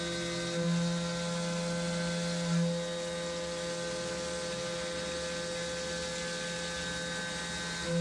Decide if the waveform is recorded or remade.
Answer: recorded